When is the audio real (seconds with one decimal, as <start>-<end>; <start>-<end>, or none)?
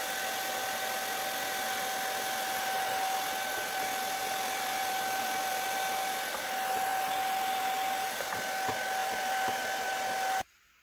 0.0-4.2; 6.0-9.0; 9.9-10.8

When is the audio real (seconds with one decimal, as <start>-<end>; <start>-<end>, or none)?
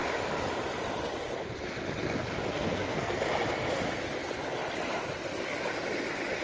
0.0-2.5; 3.2-6.4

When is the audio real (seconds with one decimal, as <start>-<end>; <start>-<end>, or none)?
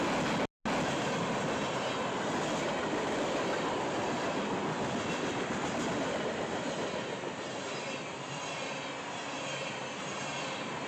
0.0-2.8; 5.9-10.9